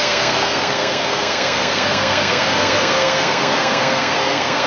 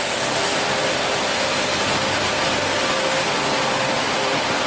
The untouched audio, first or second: second